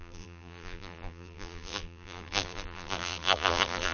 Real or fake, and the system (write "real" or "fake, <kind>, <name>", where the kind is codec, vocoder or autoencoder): fake, vocoder, BigVGAN v2